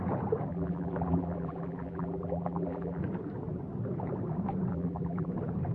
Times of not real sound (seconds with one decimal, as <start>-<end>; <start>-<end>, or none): 0.5-3.0; 4.7-5.3